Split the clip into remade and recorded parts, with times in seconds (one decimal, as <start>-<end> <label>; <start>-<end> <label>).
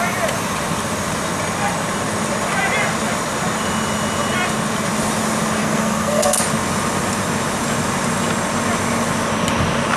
0.0-5.6 recorded; 5.6-6.4 remade; 6.4-10.0 recorded